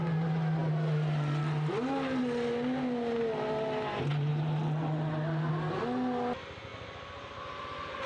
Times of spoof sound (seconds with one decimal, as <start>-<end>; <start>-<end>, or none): none